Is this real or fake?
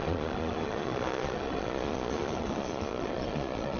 fake